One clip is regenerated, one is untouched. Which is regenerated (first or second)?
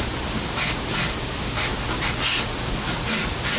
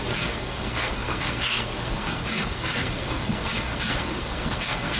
second